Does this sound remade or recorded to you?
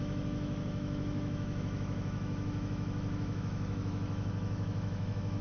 remade